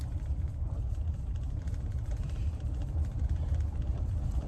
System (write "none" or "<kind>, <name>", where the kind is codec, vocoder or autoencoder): vocoder, BigVGAN v2